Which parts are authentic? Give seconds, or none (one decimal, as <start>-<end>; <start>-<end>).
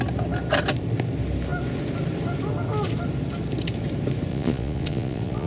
0.0-4.3